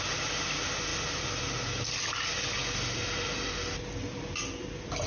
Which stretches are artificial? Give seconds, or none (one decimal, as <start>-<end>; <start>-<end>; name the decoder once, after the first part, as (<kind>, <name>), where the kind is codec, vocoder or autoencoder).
none